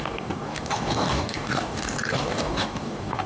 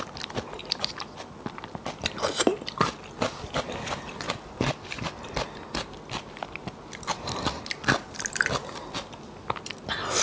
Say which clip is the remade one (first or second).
first